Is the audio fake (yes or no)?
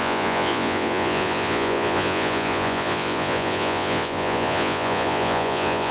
yes